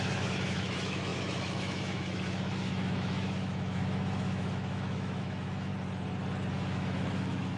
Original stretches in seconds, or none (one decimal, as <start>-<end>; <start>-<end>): 5.7-6.5